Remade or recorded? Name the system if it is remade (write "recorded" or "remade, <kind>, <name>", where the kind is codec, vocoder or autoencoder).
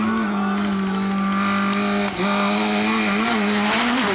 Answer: recorded